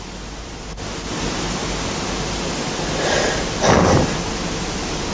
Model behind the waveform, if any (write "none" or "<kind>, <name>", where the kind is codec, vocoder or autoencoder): none